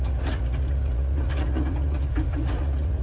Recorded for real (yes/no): no